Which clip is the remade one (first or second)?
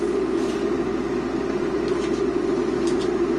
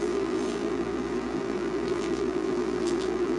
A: second